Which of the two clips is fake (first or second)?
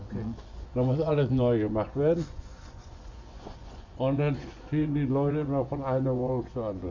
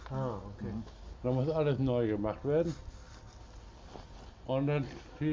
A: first